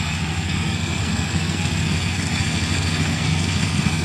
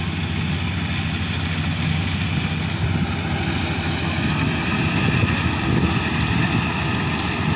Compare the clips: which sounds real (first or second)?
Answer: second